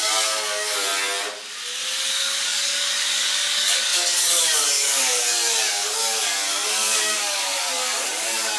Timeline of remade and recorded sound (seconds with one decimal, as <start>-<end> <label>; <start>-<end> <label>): 0.0-0.9 remade; 0.9-2.1 recorded; 2.1-8.6 remade